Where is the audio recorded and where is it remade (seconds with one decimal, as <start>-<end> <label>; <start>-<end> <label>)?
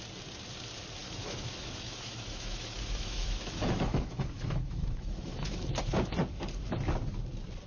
0.0-1.0 recorded; 1.0-5.6 remade; 5.6-7.7 recorded